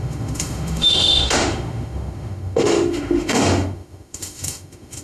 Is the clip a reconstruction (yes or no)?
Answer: yes